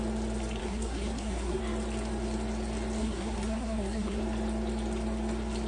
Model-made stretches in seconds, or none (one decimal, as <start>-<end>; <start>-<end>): 0.6-1.6; 3.0-4.2